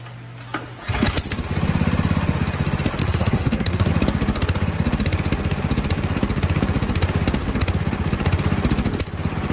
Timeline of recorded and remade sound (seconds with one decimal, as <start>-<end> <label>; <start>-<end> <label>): 0.0-3.0 recorded; 3.0-3.9 remade; 3.9-9.5 recorded